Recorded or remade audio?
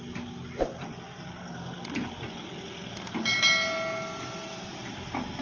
recorded